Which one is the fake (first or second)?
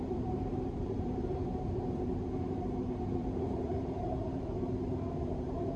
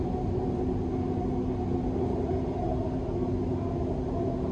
first